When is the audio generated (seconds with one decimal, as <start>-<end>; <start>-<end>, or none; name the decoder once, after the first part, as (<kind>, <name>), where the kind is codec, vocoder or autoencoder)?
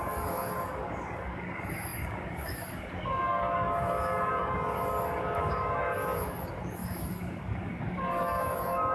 0.0-8.9 (codec, DAC)